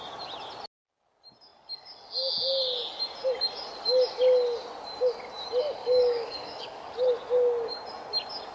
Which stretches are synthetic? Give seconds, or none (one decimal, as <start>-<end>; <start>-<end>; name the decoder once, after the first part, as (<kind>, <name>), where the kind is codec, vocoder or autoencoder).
5.8-6.9 (codec, DAC)